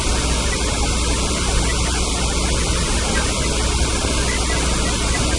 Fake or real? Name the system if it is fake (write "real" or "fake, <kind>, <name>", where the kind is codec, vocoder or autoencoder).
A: real